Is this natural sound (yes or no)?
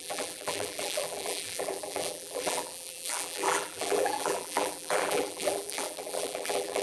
no